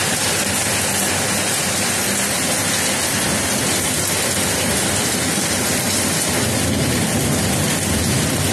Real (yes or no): yes